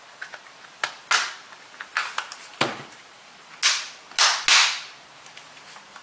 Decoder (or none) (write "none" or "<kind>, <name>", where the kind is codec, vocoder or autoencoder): none